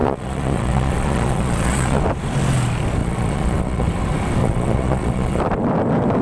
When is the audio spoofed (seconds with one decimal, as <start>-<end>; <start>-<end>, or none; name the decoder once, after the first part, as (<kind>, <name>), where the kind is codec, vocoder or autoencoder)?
0.0-2.0 (vocoder, Vocos); 3.0-3.9; 4.4-5.4